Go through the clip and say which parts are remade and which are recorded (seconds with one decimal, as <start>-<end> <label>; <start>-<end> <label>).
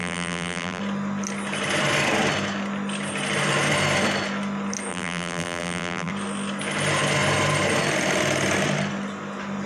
0.0-0.8 remade; 0.8-4.9 recorded; 4.9-6.1 remade; 6.1-9.7 recorded